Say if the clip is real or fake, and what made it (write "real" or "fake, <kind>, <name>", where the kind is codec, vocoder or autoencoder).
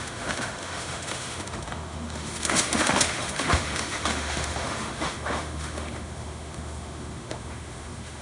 fake, autoencoder, DAC-VAE